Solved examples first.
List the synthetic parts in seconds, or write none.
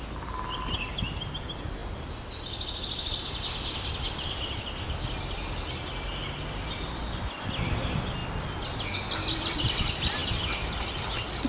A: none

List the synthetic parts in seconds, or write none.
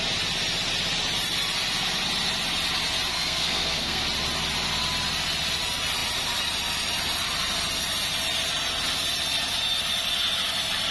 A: 3.1-4.0 (codec, SNAC)